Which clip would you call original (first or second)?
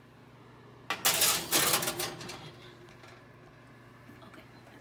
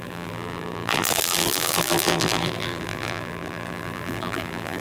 first